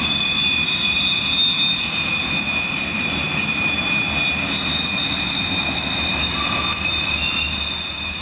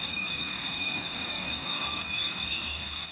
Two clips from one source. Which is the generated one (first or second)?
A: second